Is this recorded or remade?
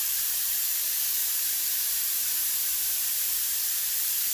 remade